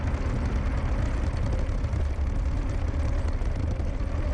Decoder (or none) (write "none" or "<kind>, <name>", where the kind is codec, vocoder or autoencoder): none